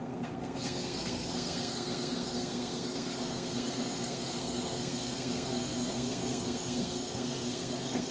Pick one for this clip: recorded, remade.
remade